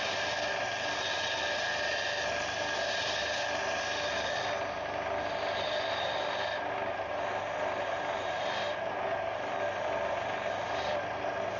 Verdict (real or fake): real